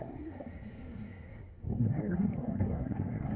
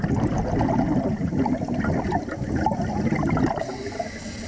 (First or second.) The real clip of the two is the second